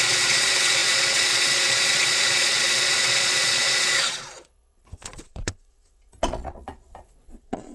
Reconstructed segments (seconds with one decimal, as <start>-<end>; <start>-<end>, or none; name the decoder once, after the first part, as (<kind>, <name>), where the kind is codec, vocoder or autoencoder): 0.0-7.7 (vocoder, Vocos)